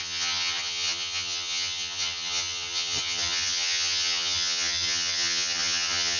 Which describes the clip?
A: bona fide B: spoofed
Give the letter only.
B